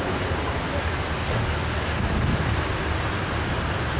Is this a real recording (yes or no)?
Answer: yes